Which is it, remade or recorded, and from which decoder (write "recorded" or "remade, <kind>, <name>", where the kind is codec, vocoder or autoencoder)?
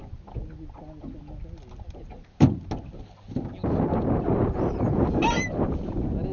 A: recorded